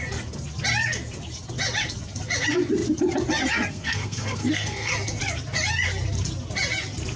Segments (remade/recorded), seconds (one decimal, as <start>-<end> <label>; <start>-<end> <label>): 0.0-3.7 recorded; 3.7-4.9 remade; 4.9-7.2 recorded